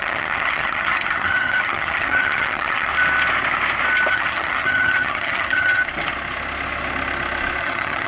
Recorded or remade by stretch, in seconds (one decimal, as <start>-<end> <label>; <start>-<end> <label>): 0.0-2.9 remade; 2.9-4.1 recorded; 4.1-5.8 remade; 5.8-7.6 recorded; 7.6-8.1 remade